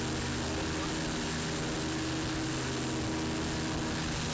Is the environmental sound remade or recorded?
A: recorded